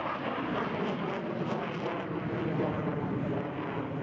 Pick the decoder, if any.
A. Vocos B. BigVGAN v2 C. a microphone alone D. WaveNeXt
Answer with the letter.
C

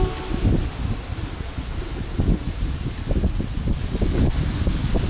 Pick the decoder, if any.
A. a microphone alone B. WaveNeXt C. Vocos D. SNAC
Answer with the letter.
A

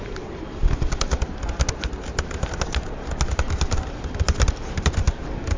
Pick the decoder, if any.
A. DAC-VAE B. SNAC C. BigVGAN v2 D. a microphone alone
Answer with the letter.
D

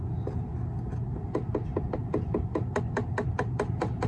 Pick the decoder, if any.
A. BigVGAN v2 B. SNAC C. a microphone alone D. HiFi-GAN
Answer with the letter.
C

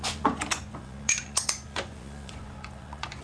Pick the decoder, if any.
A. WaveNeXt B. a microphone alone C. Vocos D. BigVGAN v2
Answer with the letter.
C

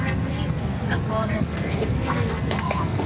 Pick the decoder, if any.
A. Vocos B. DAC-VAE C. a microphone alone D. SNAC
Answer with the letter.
D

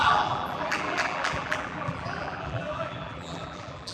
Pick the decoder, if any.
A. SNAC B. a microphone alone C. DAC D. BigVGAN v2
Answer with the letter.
D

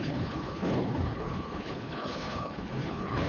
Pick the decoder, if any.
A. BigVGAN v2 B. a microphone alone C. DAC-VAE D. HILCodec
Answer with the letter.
D